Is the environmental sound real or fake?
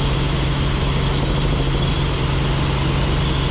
real